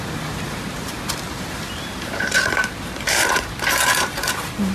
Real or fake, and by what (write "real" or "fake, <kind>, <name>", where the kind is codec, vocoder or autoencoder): fake, vocoder, BigVGAN v2